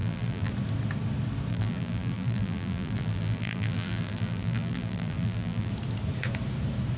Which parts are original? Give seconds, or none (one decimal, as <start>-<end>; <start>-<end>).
0.5-1.5; 5.7-7.0